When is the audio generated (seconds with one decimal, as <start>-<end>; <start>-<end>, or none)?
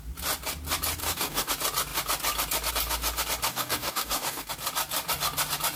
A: 1.0-1.5; 3.5-4.5